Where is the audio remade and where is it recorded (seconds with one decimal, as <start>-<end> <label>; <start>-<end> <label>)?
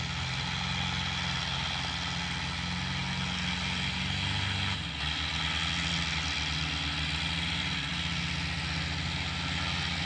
0.0-10.1 recorded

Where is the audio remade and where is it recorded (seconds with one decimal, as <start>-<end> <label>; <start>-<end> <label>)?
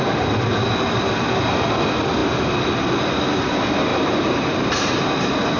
0.0-3.9 recorded; 3.9-5.6 remade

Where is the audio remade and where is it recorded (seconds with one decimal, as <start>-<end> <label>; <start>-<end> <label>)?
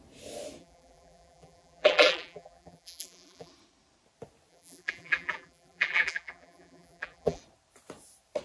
0.0-0.6 recorded; 0.6-3.5 remade; 3.5-4.5 recorded; 4.5-7.4 remade; 7.4-8.4 recorded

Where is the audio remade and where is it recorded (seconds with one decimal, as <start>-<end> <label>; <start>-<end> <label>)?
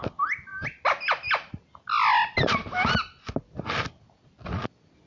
0.0-0.5 remade; 0.5-3.6 recorded; 3.6-5.1 remade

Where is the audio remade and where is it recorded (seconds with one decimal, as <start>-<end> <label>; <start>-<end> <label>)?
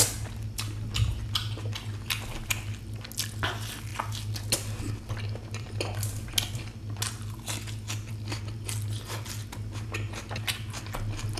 0.0-11.4 recorded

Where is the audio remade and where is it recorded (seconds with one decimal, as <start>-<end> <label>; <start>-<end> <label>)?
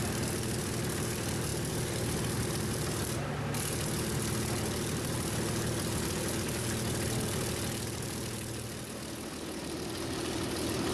0.0-10.9 recorded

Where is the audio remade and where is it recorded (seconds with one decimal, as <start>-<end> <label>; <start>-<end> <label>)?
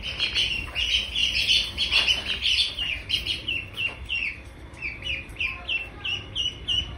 0.0-1.2 recorded; 1.2-5.4 remade; 5.4-7.0 recorded